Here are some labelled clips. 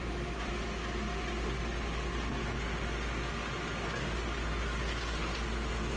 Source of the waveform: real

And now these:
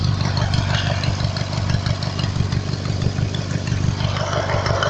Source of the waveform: real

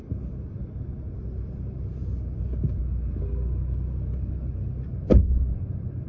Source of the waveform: real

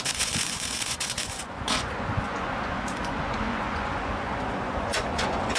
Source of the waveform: fake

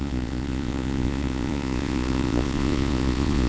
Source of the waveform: fake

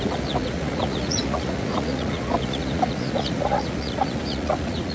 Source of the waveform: fake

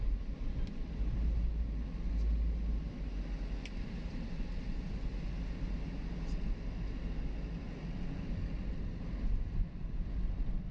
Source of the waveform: real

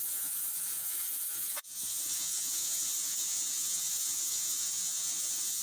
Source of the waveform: fake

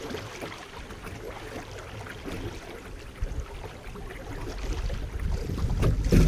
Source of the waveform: real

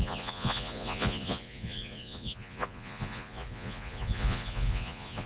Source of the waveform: fake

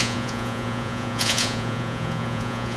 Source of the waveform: fake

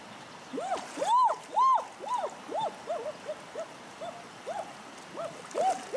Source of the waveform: real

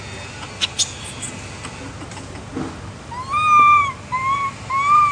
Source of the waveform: real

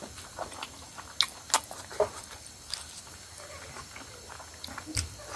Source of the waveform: real